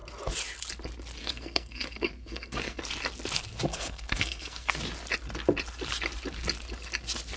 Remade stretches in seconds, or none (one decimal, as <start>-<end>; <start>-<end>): 1.2-2.8; 3.7-4.8